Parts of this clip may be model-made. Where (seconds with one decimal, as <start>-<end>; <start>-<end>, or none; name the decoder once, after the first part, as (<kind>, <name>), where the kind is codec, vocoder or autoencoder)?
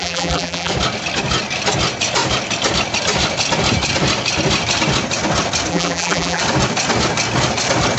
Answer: 0.0-0.7 (vocoder, BigVGAN v2); 5.7-6.4